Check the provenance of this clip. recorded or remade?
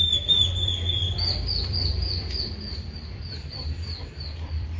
remade